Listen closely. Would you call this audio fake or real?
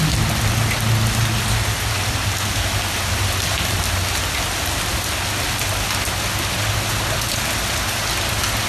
real